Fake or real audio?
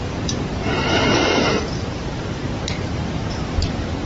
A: fake